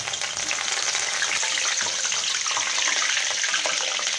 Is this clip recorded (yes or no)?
yes